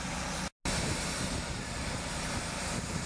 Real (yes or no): yes